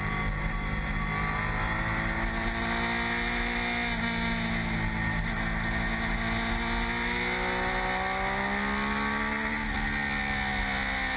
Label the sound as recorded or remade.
recorded